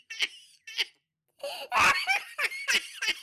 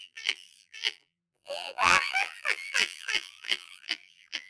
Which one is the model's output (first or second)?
second